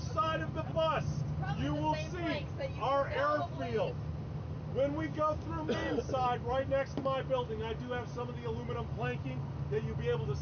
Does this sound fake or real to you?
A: real